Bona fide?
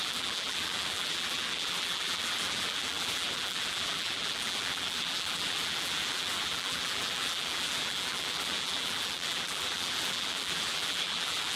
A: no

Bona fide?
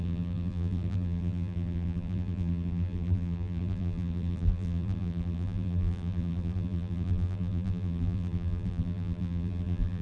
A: no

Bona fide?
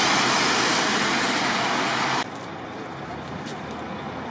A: yes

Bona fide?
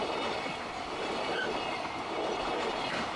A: yes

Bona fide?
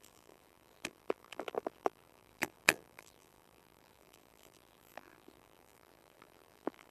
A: no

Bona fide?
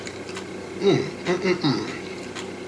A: yes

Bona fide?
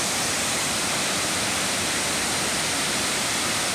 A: no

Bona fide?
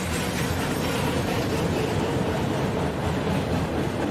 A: yes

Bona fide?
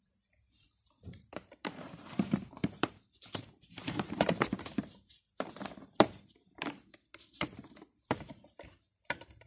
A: no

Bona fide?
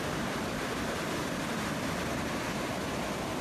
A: yes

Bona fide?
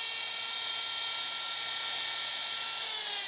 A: no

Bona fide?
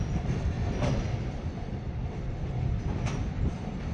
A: no